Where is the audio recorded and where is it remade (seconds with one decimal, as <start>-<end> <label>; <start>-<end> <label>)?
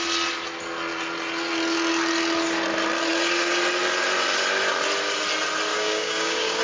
0.0-5.7 recorded; 5.7-6.6 remade